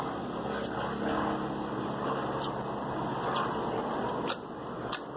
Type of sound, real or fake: real